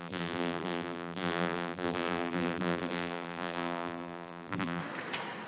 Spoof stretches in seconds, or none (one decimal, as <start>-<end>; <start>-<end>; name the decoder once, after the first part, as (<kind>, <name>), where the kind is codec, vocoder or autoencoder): 0.0-4.8 (vocoder, BigVGAN v2)